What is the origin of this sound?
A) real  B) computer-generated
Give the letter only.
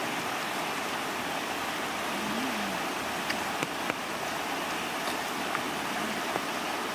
A